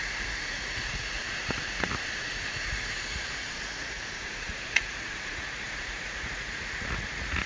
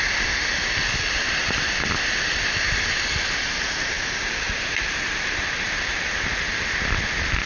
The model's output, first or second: first